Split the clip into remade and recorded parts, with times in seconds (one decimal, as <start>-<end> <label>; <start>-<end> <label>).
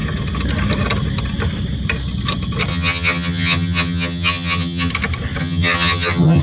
0.0-2.7 recorded; 2.7-4.9 remade; 4.9-5.4 recorded; 5.4-6.4 remade